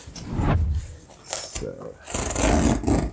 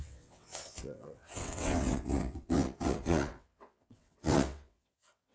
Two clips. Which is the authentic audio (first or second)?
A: first